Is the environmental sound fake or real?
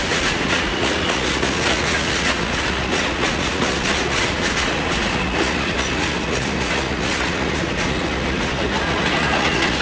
fake